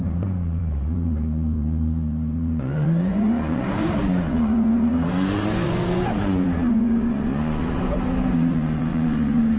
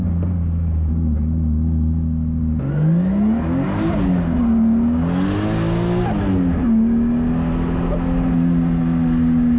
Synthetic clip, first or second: first